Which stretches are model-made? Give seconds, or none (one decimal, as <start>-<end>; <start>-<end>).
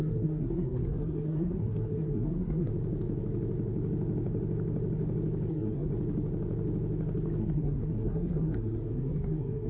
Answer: 0.0-2.7; 5.5-5.9; 7.4-9.7